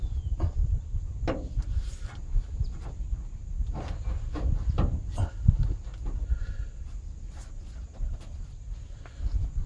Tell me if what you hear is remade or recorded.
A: recorded